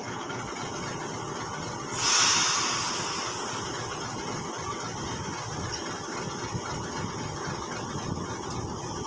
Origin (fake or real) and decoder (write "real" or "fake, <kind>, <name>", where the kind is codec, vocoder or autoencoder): real